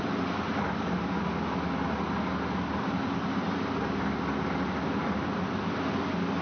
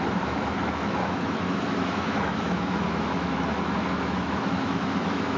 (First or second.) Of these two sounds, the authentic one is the first